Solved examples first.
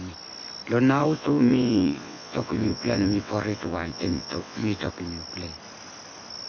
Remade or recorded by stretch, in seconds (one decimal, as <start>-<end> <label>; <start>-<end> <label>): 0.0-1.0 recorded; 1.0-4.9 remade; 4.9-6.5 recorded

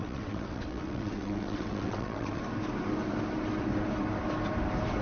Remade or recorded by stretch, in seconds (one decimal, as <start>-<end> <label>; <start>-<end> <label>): 0.0-2.4 remade; 2.4-5.0 recorded

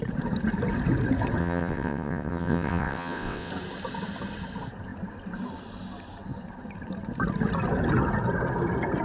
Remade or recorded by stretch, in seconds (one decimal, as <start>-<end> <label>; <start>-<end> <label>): 0.0-1.4 recorded; 1.4-3.5 remade; 3.5-9.0 recorded

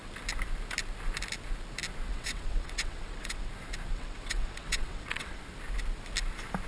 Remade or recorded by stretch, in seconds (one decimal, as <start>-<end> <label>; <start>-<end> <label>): 0.0-2.1 recorded; 2.1-3.5 remade; 3.5-3.9 recorded; 3.9-5.4 remade; 5.4-6.7 recorded

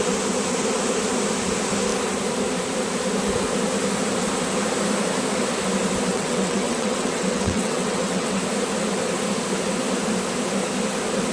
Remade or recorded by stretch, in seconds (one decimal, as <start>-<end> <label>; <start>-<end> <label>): 0.0-6.1 recorded; 6.1-8.4 remade; 8.4-11.3 recorded